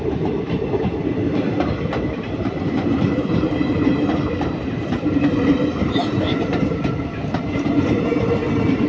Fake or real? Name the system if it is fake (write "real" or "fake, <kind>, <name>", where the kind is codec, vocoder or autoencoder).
fake, vocoder, BigVGAN v2